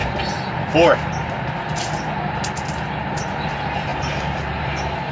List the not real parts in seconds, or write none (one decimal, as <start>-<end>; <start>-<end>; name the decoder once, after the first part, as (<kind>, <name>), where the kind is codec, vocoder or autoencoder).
3.9-5.1 (vocoder, BigVGAN v2)